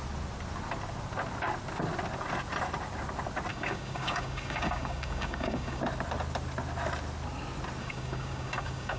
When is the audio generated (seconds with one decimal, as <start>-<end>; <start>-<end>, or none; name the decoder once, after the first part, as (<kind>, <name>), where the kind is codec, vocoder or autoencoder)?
3.5-5.8 (codec, DAC); 7.8-9.0